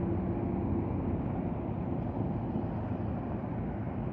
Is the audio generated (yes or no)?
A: no